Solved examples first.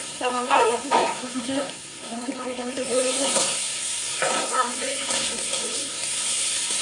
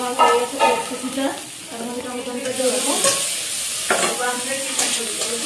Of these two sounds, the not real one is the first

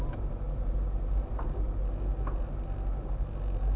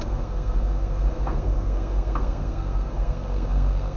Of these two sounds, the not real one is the second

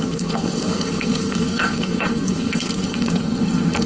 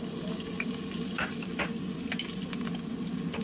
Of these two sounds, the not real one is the first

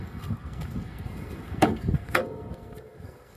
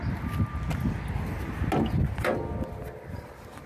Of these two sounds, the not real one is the first